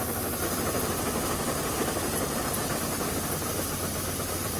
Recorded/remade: recorded